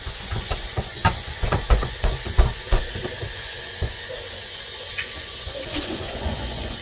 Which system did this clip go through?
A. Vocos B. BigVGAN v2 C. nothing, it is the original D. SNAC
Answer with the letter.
A